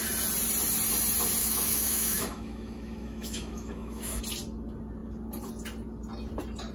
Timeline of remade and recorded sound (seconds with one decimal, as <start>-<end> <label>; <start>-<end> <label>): 0.0-1.4 recorded; 1.4-4.2 remade; 4.2-6.7 recorded